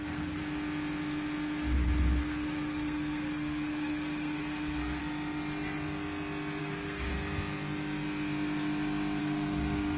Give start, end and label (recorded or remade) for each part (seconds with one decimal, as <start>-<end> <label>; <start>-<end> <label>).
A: 0.0-0.4 remade; 0.4-2.2 recorded; 2.2-5.0 remade; 5.0-6.6 recorded; 6.6-7.1 remade; 7.1-9.2 recorded; 9.2-10.0 remade